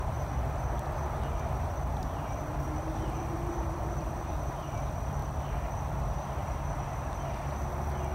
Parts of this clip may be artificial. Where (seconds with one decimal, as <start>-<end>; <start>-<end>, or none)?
2.0-4.3